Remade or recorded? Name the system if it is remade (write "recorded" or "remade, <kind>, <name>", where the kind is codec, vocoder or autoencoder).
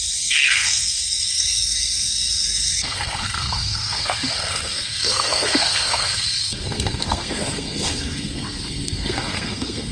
remade, codec, SNAC